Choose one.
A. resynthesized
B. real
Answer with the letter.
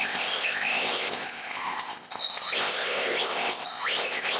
A